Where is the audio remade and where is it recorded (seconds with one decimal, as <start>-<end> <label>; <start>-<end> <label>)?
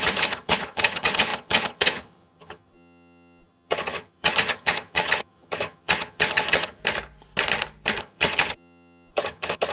0.0-6.8 remade; 6.8-8.0 recorded; 8.0-9.7 remade